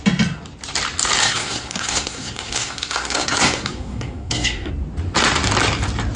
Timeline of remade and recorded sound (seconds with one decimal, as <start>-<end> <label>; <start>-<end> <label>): 0.0-1.2 recorded; 1.2-4.7 remade; 4.7-6.2 recorded